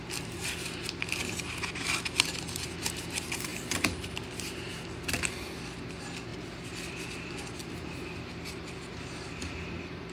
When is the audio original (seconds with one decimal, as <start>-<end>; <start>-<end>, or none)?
0.0-1.2; 2.4-3.5; 4.8-6.3; 7.3-10.1